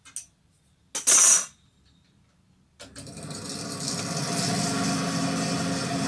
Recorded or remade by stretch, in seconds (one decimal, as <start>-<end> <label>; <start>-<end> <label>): 0.0-6.1 recorded